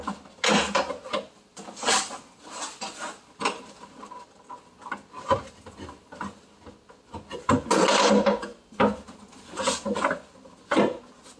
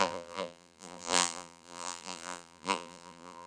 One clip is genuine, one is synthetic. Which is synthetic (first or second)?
second